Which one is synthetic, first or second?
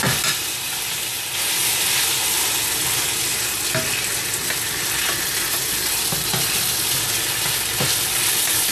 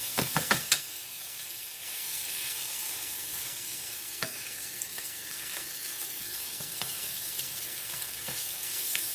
second